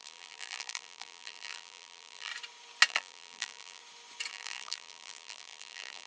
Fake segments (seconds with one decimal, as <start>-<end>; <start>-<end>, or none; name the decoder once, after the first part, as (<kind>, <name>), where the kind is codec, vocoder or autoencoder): 0.0-2.3 (vocoder, BigVGAN v2); 2.9-3.8; 4.3-6.1